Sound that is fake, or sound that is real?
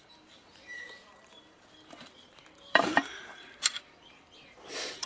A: fake